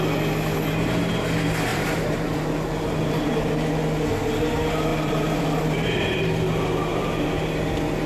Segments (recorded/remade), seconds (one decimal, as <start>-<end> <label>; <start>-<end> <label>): 0.0-1.7 recorded; 1.7-3.5 remade; 3.5-4.9 recorded; 4.9-6.2 remade; 6.2-6.9 recorded; 6.9-7.4 remade; 7.4-8.1 recorded